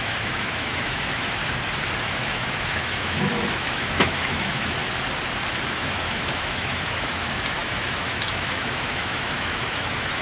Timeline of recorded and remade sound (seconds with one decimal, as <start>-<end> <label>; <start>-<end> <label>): 0.0-1.4 remade; 1.4-2.0 recorded; 2.0-4.8 remade; 4.8-5.7 recorded; 5.7-10.2 remade